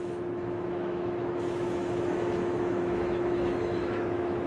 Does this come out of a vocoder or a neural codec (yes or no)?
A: yes